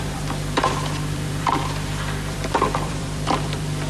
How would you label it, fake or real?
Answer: fake